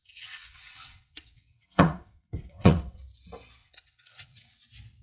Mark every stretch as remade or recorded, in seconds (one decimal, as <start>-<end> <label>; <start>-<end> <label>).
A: 0.0-3.0 remade; 3.0-3.6 recorded; 3.6-4.6 remade; 4.6-5.0 recorded